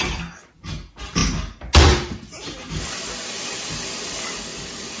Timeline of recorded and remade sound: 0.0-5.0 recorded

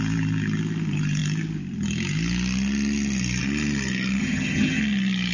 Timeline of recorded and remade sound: 0.0-4.2 recorded; 4.2-4.8 remade; 4.8-5.3 recorded

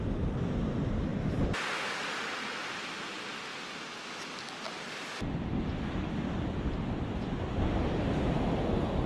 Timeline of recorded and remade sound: 0.0-9.1 recorded